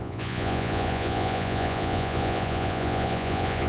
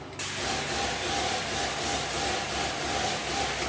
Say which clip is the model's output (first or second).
first